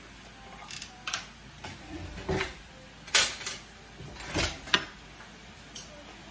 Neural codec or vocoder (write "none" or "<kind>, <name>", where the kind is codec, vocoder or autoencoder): none